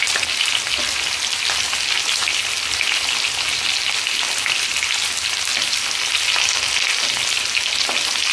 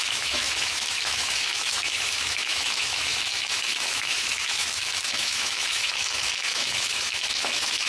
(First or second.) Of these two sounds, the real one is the first